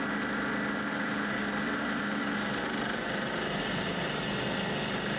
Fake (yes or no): no